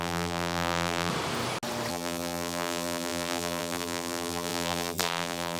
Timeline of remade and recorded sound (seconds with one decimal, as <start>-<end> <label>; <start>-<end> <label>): 0.0-1.1 remade; 1.1-1.9 recorded; 1.9-5.6 remade